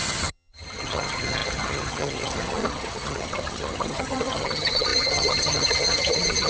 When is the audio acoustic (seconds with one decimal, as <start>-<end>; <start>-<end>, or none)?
none